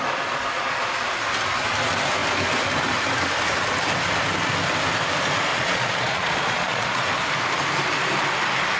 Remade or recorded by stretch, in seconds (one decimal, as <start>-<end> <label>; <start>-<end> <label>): 0.0-5.5 recorded; 5.5-7.0 remade; 7.0-8.8 recorded